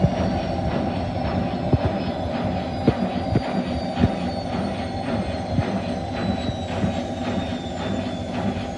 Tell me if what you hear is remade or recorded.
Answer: recorded